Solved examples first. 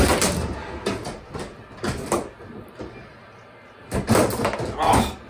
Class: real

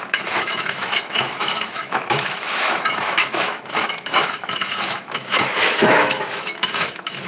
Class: fake